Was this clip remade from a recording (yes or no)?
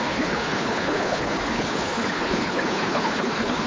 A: yes